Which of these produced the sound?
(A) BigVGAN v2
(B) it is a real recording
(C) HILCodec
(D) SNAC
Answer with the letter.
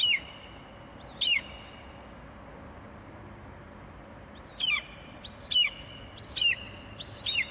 B